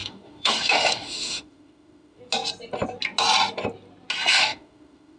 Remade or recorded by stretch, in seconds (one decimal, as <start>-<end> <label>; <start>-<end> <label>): 0.0-2.2 remade; 2.2-4.3 recorded; 4.3-5.2 remade